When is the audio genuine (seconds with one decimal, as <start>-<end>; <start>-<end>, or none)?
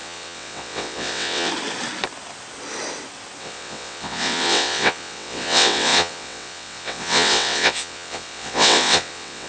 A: 1.5-3.4